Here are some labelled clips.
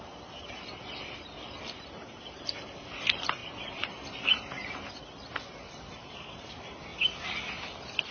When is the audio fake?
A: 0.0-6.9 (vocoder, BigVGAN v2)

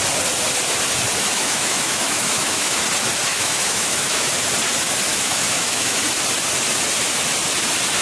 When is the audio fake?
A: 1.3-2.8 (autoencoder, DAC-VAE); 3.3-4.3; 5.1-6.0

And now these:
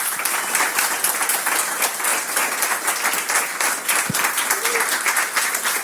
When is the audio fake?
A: none